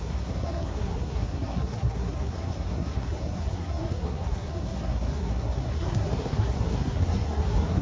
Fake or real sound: fake